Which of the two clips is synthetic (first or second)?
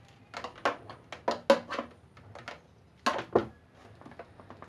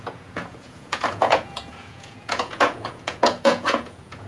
second